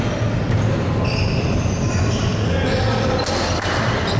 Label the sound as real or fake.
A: real